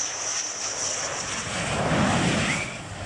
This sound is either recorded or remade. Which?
recorded